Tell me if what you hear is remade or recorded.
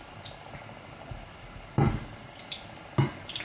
recorded